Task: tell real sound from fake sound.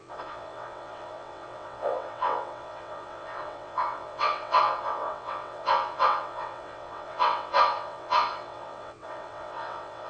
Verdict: fake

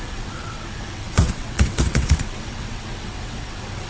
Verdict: fake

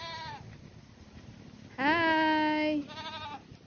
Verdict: real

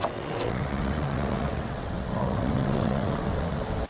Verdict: fake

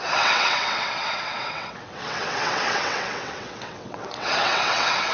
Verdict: fake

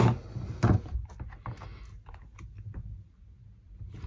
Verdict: real